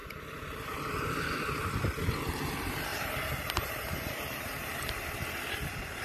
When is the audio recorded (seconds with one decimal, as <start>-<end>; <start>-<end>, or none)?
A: 0.0-2.9; 4.9-6.0